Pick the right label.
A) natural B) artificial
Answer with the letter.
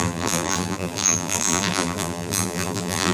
B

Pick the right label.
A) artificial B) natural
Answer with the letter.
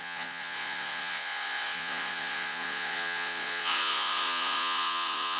A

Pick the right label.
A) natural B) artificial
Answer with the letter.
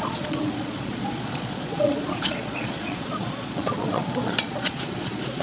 B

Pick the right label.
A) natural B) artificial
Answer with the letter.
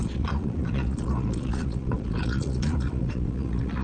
B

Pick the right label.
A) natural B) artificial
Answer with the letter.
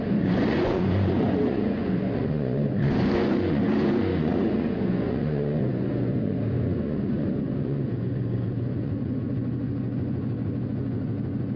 B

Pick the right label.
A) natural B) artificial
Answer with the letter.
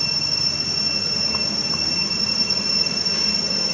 A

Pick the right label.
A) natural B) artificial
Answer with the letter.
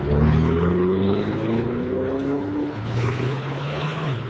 B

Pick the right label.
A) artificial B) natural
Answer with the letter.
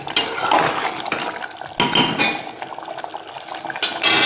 B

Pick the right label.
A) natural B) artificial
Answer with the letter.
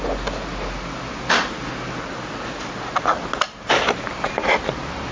A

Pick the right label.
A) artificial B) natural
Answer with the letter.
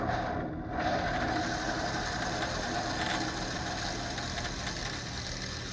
B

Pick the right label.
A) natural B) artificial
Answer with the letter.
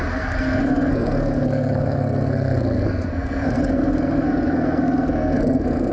B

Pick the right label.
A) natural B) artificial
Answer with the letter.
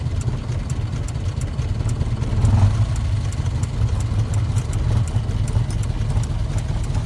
A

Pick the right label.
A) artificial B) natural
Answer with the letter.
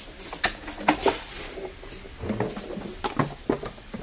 B